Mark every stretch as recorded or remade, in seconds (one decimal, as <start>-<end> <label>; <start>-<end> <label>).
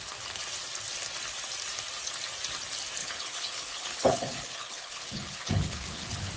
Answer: 0.0-3.0 recorded; 3.0-6.4 remade